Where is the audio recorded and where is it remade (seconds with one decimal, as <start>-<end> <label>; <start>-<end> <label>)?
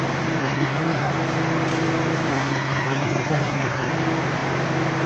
0.0-0.4 recorded; 0.4-1.1 remade; 1.1-2.3 recorded; 2.3-3.9 remade; 3.9-5.1 recorded